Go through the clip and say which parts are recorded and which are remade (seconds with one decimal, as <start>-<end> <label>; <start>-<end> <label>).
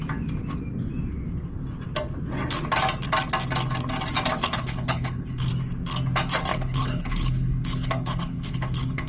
0.0-4.4 recorded; 4.4-5.5 remade; 5.5-6.5 recorded; 6.5-9.1 remade